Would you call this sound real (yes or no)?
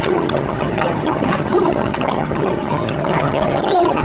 no